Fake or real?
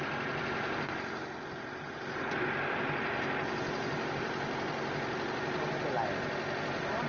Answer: real